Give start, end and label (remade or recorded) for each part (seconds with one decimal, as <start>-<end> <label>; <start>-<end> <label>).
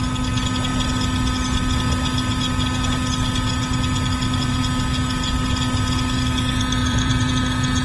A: 0.0-6.8 recorded; 6.8-7.3 remade; 7.3-7.8 recorded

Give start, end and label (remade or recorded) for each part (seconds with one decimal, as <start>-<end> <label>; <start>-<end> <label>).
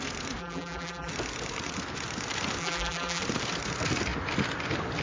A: 0.0-0.4 recorded; 0.4-1.1 remade; 1.1-2.6 recorded; 2.6-3.2 remade; 3.2-5.0 recorded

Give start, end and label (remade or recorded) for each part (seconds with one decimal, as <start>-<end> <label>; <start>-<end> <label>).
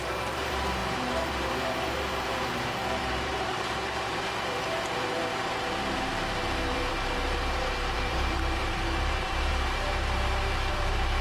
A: 0.0-9.5 remade; 9.5-10.7 recorded; 10.7-11.2 remade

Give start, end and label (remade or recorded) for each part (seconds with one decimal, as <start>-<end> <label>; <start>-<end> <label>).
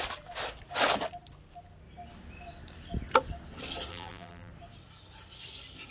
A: 0.0-3.9 recorded; 3.9-4.5 remade; 4.5-5.9 recorded